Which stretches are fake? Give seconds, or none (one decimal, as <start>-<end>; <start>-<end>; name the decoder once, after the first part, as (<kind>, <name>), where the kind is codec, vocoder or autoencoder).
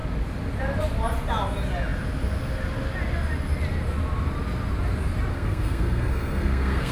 5.3-6.9 (codec, SNAC)